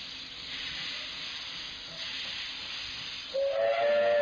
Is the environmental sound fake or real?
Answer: real